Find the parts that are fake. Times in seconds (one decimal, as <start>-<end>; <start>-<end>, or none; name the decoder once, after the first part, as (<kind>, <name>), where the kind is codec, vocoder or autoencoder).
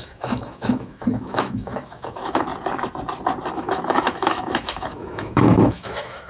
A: 0.0-2.5 (autoencoder, DAC-VAE); 3.5-6.3